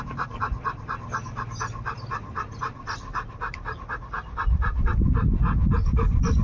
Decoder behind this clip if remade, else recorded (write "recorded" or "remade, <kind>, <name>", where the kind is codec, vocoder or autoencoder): recorded